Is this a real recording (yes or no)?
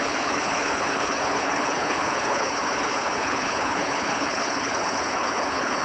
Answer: no